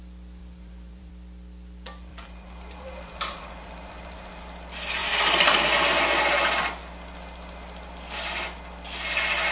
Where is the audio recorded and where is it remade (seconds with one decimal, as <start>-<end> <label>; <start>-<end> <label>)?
0.0-0.4 recorded; 0.4-1.1 remade; 1.1-2.1 recorded; 2.1-4.4 remade; 4.4-5.0 recorded; 5.0-5.8 remade; 5.8-9.5 recorded